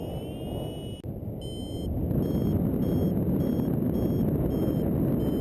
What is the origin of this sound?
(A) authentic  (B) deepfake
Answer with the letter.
A